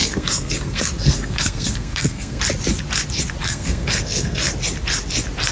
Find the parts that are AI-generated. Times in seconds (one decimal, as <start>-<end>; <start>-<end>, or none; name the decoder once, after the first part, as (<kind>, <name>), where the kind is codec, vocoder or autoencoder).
0.0-2.4 (codec, SNAC); 3.4-4.5